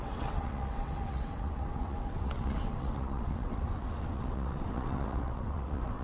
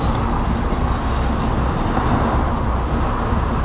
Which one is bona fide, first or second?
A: second